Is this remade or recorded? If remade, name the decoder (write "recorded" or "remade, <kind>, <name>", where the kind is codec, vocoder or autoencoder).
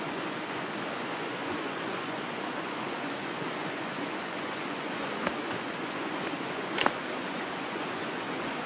remade, vocoder, Vocos